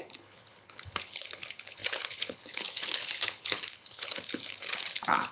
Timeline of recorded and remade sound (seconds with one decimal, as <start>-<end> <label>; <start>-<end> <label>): 0.0-5.3 remade

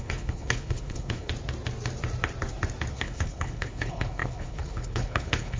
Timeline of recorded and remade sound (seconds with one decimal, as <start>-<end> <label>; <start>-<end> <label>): 0.0-1.3 remade; 1.3-2.9 recorded; 2.9-5.6 remade

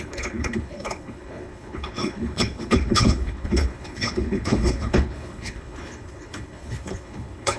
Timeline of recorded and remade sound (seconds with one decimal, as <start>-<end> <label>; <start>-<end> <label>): 0.0-7.6 remade

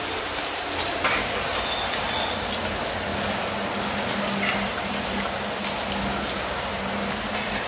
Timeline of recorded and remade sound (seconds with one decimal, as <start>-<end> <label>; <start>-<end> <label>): 0.0-7.7 recorded

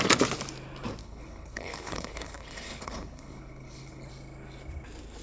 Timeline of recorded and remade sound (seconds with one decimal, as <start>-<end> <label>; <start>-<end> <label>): 0.0-1.0 recorded; 1.0-4.1 remade; 4.1-5.2 recorded

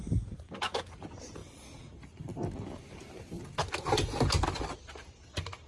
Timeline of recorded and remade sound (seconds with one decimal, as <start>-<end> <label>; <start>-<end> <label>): 0.0-5.7 recorded

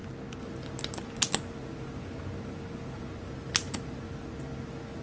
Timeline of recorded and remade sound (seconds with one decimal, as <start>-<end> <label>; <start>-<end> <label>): 0.0-5.0 recorded